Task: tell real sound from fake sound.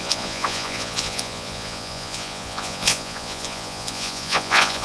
fake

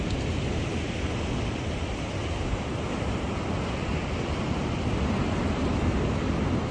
real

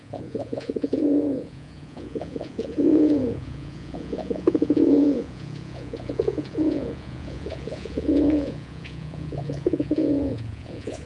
fake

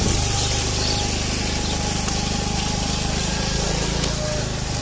real